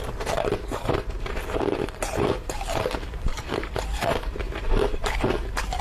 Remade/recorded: remade